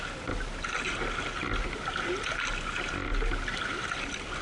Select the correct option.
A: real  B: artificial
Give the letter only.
A